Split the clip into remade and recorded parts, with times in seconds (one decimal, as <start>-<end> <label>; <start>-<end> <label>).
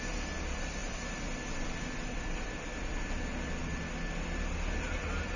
0.0-5.4 recorded